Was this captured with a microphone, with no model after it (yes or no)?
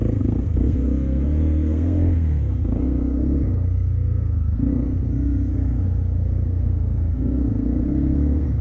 no